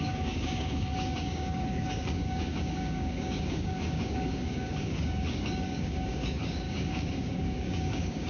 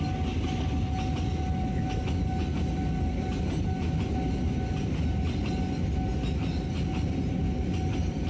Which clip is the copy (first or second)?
first